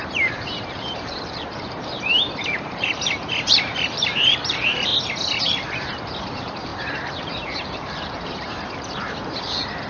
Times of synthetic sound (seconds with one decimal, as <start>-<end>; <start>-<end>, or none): 0.0-4.9; 5.4-9.9